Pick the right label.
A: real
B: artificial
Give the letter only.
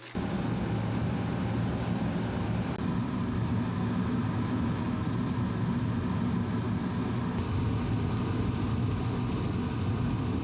A